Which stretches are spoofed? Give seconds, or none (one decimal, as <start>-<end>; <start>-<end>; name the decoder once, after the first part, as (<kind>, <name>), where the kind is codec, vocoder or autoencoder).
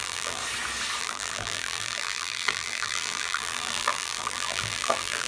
0.0-0.4 (vocoder, BigVGAN v2); 1.0-5.3